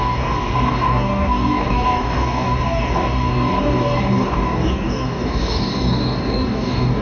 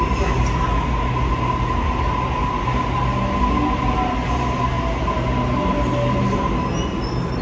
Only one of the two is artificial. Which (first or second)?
first